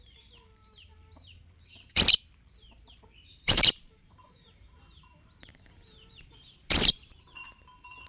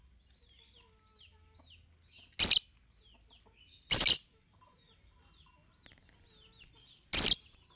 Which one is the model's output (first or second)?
first